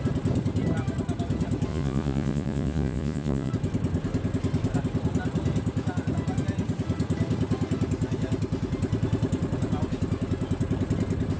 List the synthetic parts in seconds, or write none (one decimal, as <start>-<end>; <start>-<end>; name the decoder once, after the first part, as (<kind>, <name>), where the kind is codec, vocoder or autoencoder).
1.7-3.5 (vocoder, Vocos)